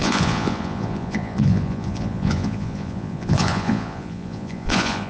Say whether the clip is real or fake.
fake